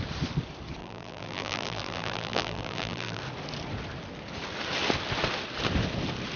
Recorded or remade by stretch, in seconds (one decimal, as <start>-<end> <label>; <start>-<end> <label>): 0.0-0.8 recorded; 0.8-3.2 remade; 3.2-6.4 recorded